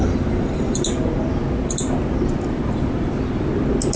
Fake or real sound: real